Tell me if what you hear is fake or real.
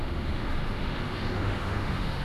fake